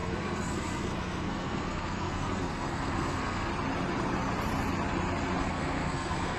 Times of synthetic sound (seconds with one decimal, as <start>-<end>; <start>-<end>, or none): 0.0-3.5; 5.4-6.4